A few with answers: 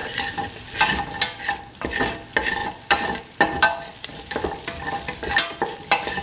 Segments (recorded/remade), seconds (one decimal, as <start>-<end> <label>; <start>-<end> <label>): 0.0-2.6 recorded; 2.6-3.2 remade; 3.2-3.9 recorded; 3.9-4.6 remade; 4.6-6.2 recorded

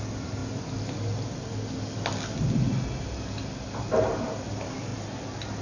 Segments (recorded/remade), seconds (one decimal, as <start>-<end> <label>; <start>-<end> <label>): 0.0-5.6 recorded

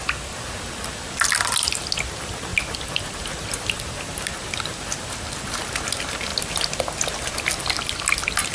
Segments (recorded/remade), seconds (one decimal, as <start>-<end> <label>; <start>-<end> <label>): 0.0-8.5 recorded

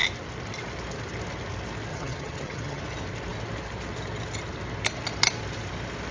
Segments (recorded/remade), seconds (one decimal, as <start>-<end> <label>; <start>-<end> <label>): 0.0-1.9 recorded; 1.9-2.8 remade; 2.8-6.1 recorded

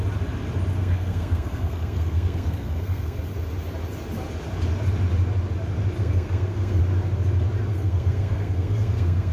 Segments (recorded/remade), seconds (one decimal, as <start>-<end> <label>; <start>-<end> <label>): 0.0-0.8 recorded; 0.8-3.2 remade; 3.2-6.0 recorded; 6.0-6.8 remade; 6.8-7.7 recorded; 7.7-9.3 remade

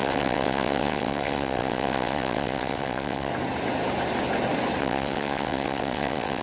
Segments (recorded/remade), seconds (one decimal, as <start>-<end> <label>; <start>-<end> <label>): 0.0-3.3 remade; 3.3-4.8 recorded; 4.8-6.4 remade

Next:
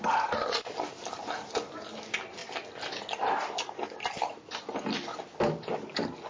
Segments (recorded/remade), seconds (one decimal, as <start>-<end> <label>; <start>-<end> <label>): 0.0-6.3 recorded

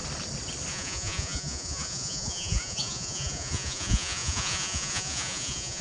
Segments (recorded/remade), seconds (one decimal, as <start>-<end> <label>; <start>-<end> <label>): 0.0-0.7 recorded; 0.7-5.8 remade